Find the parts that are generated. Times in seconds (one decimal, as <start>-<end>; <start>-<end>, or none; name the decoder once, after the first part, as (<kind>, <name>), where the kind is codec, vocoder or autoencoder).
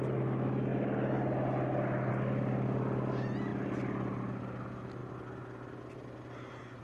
none